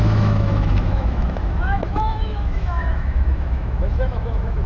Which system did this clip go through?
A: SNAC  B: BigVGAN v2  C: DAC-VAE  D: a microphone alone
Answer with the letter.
C